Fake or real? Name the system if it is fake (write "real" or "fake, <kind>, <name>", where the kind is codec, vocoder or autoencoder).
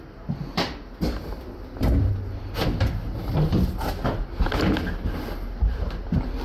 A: real